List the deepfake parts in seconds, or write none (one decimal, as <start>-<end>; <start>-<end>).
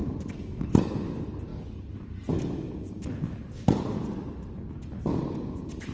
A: none